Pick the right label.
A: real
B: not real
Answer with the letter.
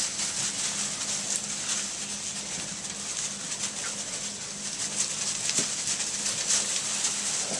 A